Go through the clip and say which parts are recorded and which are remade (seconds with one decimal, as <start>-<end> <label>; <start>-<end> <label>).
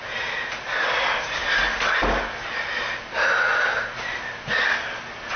0.0-5.4 recorded